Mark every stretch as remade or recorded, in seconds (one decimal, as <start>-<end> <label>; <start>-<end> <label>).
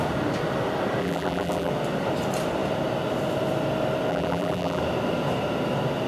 0.0-1.0 recorded; 1.0-1.7 remade; 1.7-4.1 recorded; 4.1-4.8 remade; 4.8-6.1 recorded